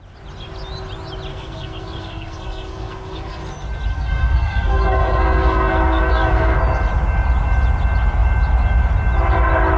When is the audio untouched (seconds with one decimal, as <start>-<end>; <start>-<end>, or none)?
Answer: 0.0-1.3; 3.4-3.9; 6.6-9.8